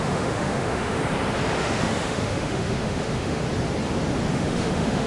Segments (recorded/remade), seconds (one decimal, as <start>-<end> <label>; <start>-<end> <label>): 0.0-1.0 remade; 1.0-1.6 recorded; 1.6-3.4 remade; 3.4-4.3 recorded; 4.3-5.1 remade

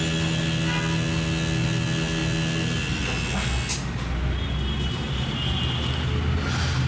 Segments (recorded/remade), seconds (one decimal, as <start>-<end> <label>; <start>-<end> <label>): 0.0-6.9 recorded

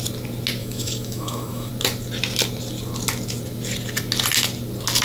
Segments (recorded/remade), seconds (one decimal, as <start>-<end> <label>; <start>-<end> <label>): 0.0-0.6 recorded; 0.6-1.7 remade; 1.7-5.0 recorded

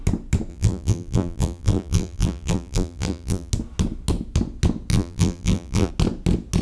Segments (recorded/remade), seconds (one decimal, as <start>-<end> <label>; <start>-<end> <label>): 0.0-0.5 recorded; 0.5-3.5 remade; 3.5-4.9 recorded; 4.9-5.9 remade; 5.9-6.6 recorded

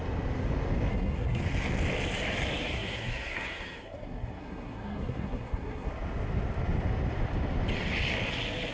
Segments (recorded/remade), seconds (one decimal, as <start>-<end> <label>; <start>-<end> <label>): 0.0-0.9 recorded; 0.9-1.4 remade; 1.4-2.6 recorded; 2.6-5.9 remade; 5.9-8.7 recorded

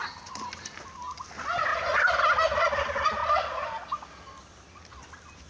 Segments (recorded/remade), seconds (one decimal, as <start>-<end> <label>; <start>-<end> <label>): 0.0-5.5 recorded

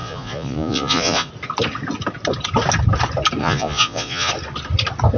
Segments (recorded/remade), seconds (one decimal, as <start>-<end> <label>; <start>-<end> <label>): 0.0-1.3 remade; 1.3-3.4 recorded; 3.4-4.3 remade; 4.3-5.2 recorded

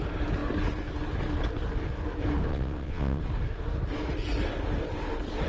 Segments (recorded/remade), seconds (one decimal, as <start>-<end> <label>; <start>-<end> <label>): 0.0-2.5 recorded; 2.5-3.2 remade; 3.2-5.5 recorded